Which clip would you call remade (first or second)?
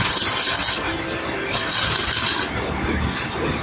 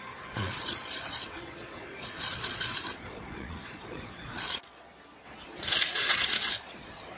second